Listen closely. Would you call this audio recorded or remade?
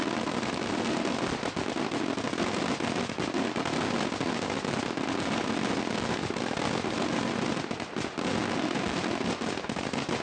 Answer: recorded